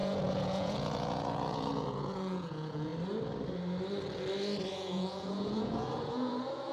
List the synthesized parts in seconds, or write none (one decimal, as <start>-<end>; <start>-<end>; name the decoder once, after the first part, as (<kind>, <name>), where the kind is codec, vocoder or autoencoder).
0.0-2.9 (vocoder, Vocos); 4.7-6.7

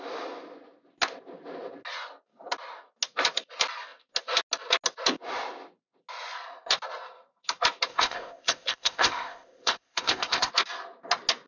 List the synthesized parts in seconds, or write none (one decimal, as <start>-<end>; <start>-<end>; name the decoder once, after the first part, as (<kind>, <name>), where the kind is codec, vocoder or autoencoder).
7.9-10.5 (codec, ZipCodec)